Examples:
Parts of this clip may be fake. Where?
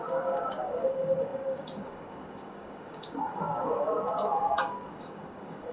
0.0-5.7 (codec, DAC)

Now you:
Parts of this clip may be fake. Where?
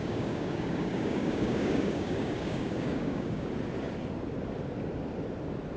0.0-3.5 (codec, DAC)